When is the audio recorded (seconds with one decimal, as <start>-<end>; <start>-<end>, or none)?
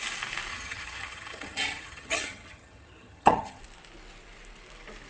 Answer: 0.0-0.5; 3.6-5.1